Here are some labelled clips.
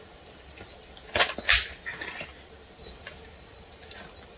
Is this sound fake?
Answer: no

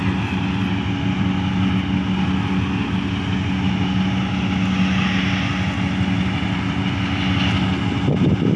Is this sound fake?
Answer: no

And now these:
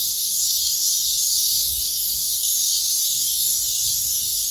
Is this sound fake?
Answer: yes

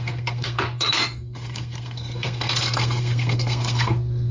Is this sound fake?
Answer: yes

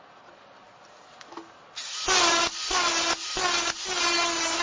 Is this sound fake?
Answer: no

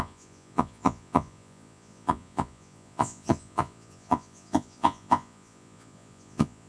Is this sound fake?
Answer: yes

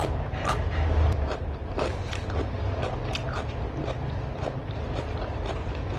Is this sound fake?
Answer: no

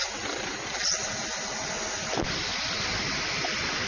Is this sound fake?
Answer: no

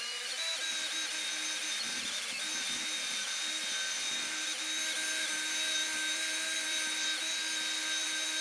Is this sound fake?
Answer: no